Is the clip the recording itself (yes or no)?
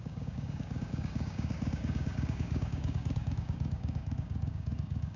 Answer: no